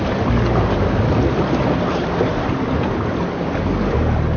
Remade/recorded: recorded